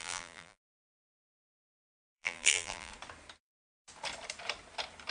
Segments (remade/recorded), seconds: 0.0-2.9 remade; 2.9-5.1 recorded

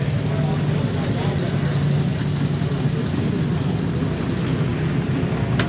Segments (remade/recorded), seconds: 0.0-2.1 recorded; 2.1-4.2 remade; 4.2-4.7 recorded; 4.7-5.7 remade

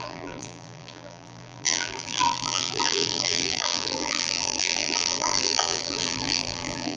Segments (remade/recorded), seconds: 0.0-7.0 remade

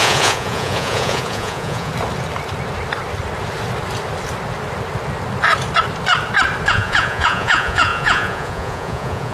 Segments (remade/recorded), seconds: 0.0-1.9 remade; 1.9-6.7 recorded; 6.7-9.3 remade

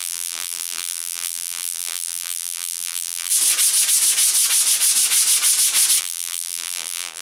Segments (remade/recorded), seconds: 0.0-3.3 remade; 3.3-6.0 recorded; 6.0-7.2 remade